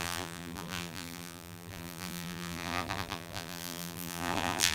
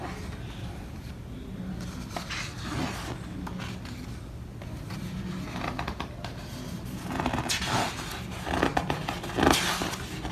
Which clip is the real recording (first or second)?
second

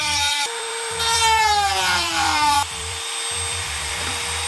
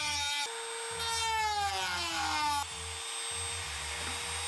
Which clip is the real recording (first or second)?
second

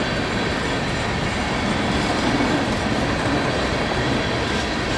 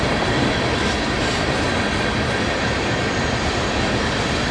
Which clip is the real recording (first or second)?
first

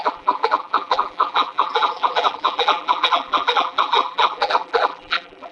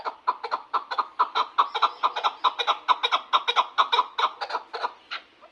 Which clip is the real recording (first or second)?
second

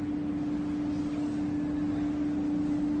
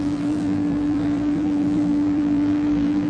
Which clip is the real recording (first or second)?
first